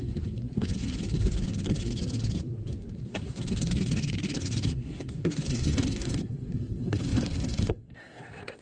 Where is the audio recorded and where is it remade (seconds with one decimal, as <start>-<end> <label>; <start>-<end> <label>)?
0.0-8.6 remade